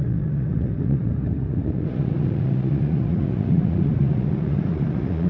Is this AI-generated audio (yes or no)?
yes